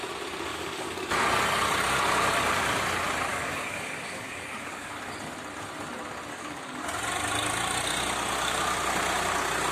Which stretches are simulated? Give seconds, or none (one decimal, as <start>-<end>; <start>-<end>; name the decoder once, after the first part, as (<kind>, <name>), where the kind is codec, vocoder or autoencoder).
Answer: 0.5-1.1 (codec, DAC); 3.3-4.9; 6.3-6.8